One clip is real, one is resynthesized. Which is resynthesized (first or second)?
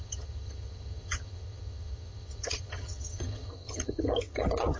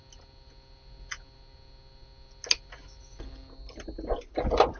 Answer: first